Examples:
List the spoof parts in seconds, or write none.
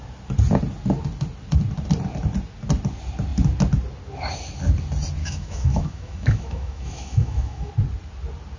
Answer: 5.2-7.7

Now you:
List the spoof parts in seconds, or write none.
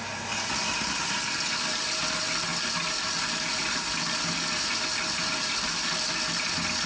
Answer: none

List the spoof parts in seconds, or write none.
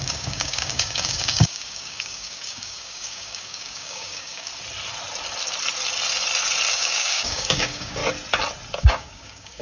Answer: 0.0-4.5; 6.7-8.0; 8.8-9.6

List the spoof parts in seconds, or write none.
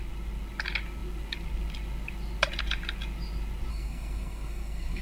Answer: 3.7-5.0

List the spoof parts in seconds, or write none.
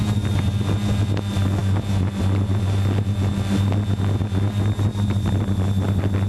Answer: none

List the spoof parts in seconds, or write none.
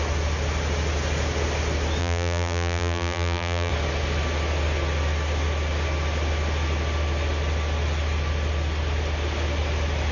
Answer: 2.0-3.7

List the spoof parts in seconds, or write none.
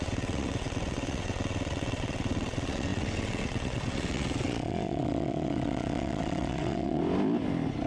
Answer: 0.0-7.0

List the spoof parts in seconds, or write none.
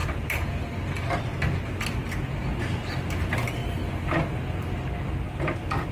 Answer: none